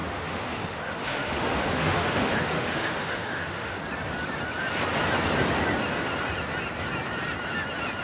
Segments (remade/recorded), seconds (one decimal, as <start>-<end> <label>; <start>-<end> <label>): 0.0-3.8 remade; 3.8-8.0 recorded